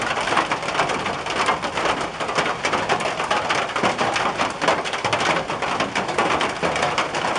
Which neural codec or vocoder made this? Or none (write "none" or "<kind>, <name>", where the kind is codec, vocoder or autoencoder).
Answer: vocoder, BigVGAN v2